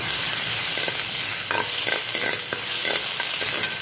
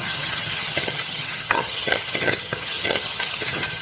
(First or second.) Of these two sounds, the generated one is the second